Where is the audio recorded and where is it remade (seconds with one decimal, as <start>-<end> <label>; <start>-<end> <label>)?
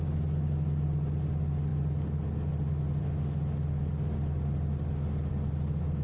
0.0-6.0 recorded